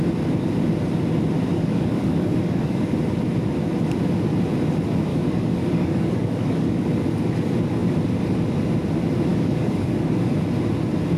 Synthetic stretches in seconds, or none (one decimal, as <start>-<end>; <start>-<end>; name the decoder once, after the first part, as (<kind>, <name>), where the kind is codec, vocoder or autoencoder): 1.5-2.9 (codec, DAC); 5.1-6.8; 9.3-10.3